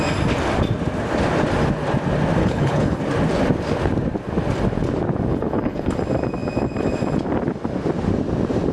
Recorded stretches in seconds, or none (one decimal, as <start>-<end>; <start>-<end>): 0.0-2.4; 3.0-5.3; 6.0-8.7